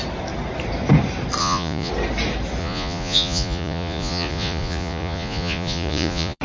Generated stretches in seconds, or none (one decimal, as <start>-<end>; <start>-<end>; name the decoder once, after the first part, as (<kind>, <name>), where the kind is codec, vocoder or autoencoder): 1.4-1.9 (vocoder, Vocos); 2.6-6.4